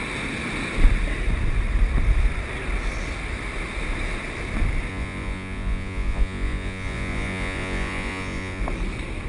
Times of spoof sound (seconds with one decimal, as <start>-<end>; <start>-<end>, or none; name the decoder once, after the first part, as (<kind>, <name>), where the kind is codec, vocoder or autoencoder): 4.9-8.6 (vocoder, Vocos)